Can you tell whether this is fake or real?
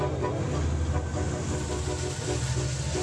real